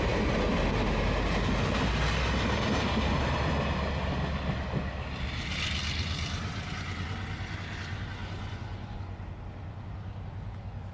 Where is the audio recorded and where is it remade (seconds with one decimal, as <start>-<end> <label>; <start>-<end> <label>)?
0.0-8.2 recorded; 8.2-9.3 remade; 9.3-10.9 recorded